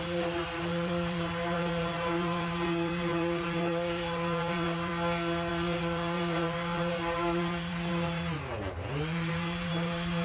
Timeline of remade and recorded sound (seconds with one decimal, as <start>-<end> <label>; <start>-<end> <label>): 0.0-4.9 remade; 4.9-5.5 recorded; 5.5-10.2 remade